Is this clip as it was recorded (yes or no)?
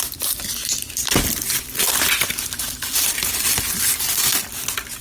yes